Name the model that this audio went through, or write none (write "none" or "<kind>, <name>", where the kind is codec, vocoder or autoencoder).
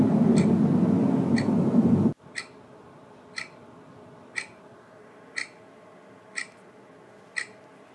none